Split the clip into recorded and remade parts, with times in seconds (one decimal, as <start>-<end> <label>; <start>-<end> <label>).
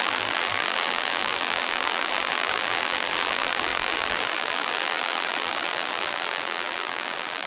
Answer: 0.0-7.5 remade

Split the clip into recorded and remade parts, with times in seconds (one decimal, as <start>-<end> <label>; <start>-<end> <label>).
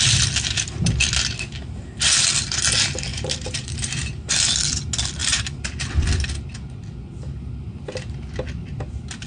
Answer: 0.0-3.1 recorded; 3.1-4.3 remade; 4.3-5.2 recorded; 5.2-5.9 remade; 5.9-9.3 recorded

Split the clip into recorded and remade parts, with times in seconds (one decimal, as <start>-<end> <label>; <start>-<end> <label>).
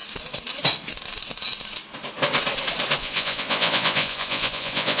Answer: 0.0-3.0 recorded; 3.0-5.0 remade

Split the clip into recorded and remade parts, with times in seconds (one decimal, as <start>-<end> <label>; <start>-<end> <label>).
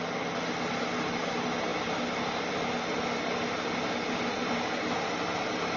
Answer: 0.0-5.8 recorded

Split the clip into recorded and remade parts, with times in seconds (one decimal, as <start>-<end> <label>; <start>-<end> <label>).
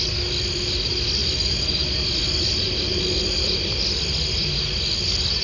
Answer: 0.0-5.4 recorded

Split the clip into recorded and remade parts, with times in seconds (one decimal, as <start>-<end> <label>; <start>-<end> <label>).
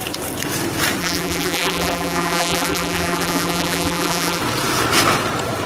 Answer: 0.0-1.0 recorded; 1.0-4.4 remade; 4.4-5.7 recorded